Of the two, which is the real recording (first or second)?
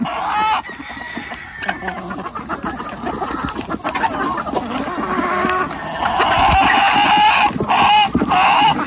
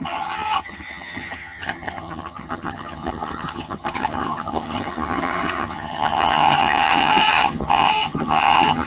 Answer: first